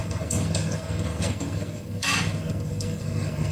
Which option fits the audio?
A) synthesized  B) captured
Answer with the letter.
A